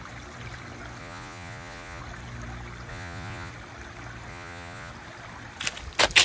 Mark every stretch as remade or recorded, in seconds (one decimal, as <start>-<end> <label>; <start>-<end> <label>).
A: 0.0-1.0 recorded; 1.0-2.0 remade; 2.0-2.9 recorded; 2.9-3.5 remade; 3.5-4.3 recorded; 4.3-4.9 remade; 4.9-6.2 recorded